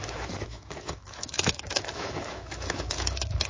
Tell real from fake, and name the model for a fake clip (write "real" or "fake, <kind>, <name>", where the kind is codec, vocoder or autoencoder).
fake, autoencoder, DAC-VAE